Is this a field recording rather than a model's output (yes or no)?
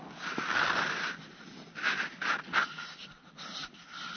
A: yes